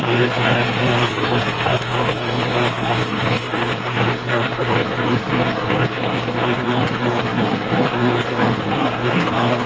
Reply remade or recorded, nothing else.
remade